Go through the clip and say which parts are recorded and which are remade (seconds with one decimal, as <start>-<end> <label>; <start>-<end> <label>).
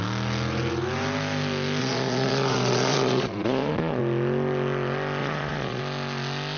0.0-1.8 recorded; 1.8-4.0 remade; 4.0-5.2 recorded; 5.2-5.8 remade; 5.8-6.6 recorded